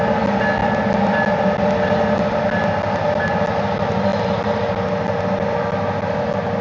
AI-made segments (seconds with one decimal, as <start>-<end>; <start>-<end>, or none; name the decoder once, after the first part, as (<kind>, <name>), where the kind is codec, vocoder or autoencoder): none